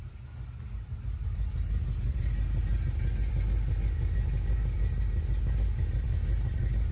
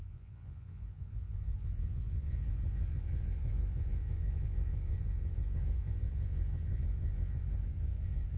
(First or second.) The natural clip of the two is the first